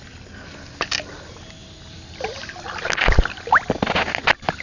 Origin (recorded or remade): recorded